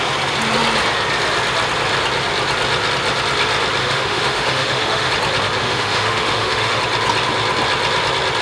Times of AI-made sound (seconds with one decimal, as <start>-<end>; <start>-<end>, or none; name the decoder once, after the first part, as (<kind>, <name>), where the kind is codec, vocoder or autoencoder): 3.8-5.1 (autoencoder, DAC-VAE); 5.6-6.8